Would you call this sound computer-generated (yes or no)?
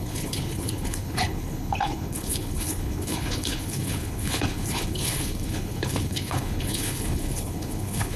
yes